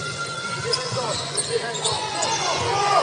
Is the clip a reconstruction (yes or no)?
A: yes